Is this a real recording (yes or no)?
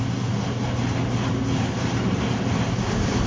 yes